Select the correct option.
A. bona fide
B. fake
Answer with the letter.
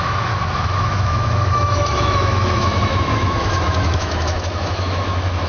B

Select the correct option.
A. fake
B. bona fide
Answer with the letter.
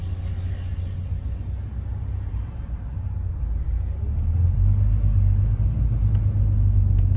B